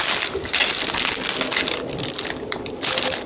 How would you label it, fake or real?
real